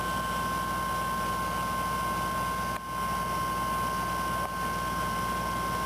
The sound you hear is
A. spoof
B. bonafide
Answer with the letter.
B